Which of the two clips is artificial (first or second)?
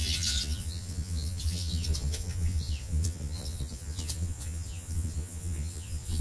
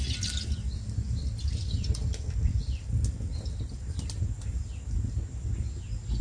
first